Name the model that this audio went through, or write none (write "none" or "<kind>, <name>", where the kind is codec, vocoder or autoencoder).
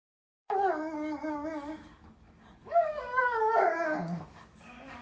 codec, DAC